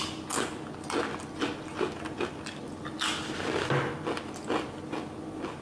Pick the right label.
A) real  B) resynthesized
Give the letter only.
A